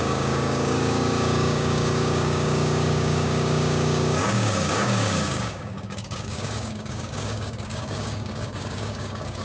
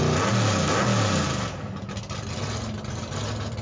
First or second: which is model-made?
first